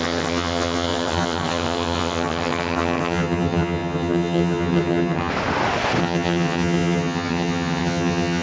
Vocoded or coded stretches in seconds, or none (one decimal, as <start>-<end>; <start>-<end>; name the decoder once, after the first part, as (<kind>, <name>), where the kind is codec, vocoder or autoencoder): 0.0-5.3 (vocoder, HiFi-GAN); 6.0-8.4

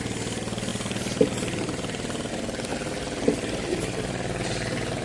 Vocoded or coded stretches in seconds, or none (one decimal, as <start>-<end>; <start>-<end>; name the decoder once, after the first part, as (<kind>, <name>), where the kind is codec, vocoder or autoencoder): none